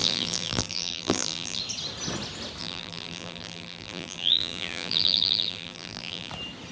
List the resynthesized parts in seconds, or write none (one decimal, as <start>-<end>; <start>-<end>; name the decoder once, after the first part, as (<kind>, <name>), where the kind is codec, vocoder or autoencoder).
0.0-1.6 (vocoder, BigVGAN v2); 2.6-6.3